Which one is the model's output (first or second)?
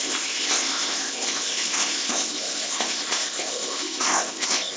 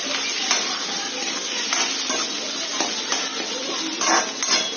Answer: first